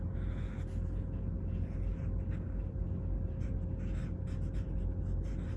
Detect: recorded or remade recorded